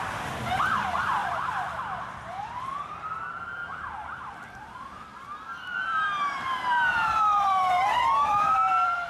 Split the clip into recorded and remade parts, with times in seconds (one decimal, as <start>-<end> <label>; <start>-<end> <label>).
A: 0.0-1.2 remade; 1.2-1.8 recorded; 1.8-9.1 remade